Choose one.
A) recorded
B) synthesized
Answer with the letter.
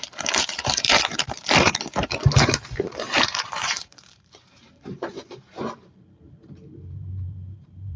B